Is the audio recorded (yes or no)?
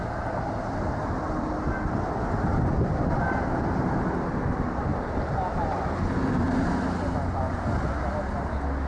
yes